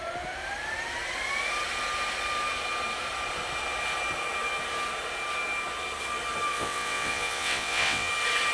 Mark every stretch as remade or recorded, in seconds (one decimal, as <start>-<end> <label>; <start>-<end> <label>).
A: 0.0-6.5 recorded; 6.5-8.1 remade; 8.1-8.5 recorded